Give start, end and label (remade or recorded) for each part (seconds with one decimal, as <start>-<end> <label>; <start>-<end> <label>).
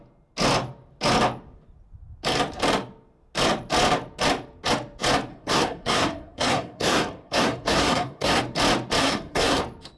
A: 0.0-5.3 recorded; 5.3-8.4 remade; 8.4-9.0 recorded; 9.0-9.6 remade; 9.6-10.0 recorded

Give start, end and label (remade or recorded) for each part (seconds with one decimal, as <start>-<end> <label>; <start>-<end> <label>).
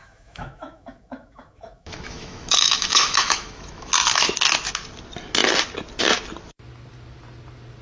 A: 0.0-3.9 remade; 3.9-7.8 recorded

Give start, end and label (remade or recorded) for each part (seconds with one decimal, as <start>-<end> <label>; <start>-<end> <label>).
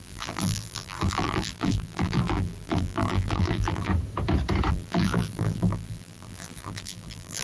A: 0.0-3.9 remade; 3.9-4.7 recorded; 4.7-7.4 remade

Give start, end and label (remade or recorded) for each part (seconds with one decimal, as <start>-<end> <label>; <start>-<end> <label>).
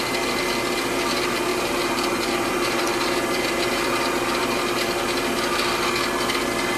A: 0.0-1.5 recorded; 1.5-4.8 remade; 4.8-6.8 recorded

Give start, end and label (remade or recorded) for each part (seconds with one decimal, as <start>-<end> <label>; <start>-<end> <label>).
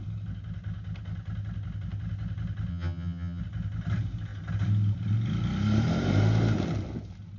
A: 0.0-2.7 recorded; 2.7-3.4 remade; 3.4-7.4 recorded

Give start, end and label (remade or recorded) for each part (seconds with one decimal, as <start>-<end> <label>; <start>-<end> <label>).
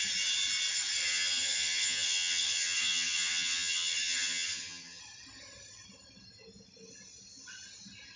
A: 0.0-1.0 recorded; 1.0-5.0 remade; 5.0-8.2 recorded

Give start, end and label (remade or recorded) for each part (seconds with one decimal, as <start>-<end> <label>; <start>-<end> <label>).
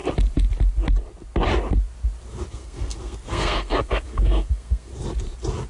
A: 0.0-2.5 recorded; 2.5-4.9 remade; 4.9-5.7 recorded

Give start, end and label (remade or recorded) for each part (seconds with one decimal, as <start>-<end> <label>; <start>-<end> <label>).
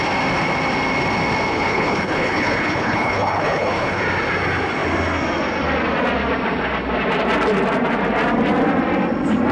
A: 0.0-1.5 recorded; 1.5-4.0 remade; 4.0-9.5 recorded